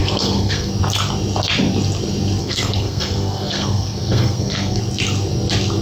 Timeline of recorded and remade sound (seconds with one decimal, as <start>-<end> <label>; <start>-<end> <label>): 0.0-0.7 remade; 0.7-2.4 recorded; 2.4-4.8 remade; 4.8-5.8 recorded